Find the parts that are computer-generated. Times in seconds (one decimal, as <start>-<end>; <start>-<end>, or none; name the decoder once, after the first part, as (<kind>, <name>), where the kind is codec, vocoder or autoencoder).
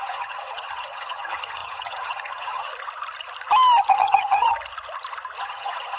0.0-2.7 (vocoder, HiFi-GAN); 3.9-4.5; 5.4-6.0